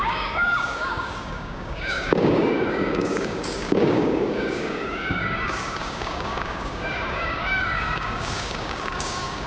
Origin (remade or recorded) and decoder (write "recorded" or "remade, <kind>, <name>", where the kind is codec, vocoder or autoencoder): remade, codec, DAC